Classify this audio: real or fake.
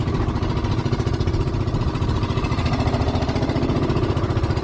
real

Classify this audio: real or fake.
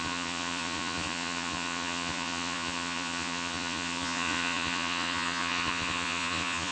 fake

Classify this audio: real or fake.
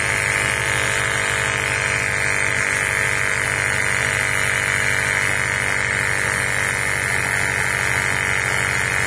real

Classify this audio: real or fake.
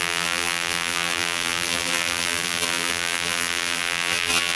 fake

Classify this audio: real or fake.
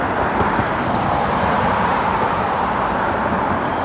fake